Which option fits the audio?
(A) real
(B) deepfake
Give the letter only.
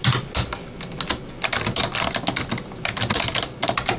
A